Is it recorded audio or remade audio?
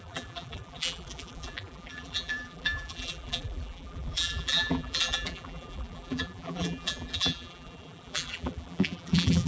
remade